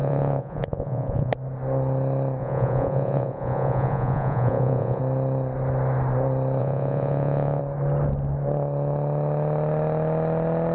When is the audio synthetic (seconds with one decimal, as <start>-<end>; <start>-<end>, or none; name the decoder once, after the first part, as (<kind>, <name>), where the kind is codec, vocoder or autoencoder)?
0.0-1.3 (vocoder, Vocos); 2.4-5.0; 6.6-7.6